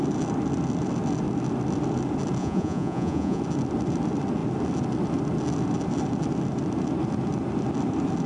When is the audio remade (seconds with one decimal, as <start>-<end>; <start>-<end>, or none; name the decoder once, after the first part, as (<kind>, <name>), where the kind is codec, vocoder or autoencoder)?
2.4-3.4 (vocoder, Vocos)